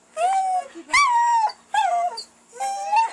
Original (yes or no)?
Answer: yes